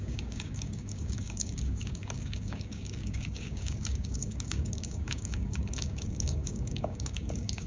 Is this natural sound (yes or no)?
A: no